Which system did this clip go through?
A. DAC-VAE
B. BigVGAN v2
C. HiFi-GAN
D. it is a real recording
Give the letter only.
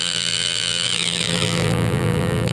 B